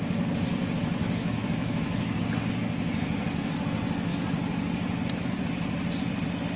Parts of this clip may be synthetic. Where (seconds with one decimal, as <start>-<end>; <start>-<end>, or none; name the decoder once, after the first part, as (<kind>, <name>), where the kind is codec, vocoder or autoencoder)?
1.0-2.2 (autoencoder, DAC-VAE)